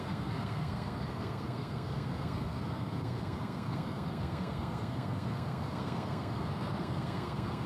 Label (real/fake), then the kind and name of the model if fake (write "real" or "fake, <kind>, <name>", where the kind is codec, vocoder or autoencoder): fake, codec, SNAC